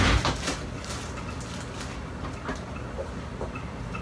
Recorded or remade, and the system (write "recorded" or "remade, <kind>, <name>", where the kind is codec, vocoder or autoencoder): recorded